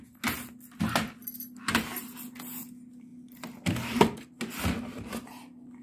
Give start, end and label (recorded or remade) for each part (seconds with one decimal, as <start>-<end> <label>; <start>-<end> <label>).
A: 0.0-5.8 recorded